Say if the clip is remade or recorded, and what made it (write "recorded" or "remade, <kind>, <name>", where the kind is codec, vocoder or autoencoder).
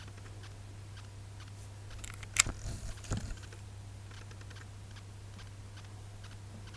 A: recorded